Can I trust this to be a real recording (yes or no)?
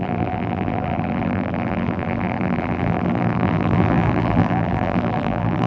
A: no